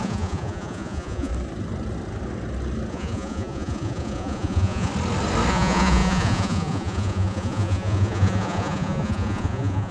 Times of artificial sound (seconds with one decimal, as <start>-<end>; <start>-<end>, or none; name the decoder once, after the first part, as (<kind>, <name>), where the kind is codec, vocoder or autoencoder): 0.0-1.3 (vocoder, Vocos); 2.9-4.9; 5.5-9.9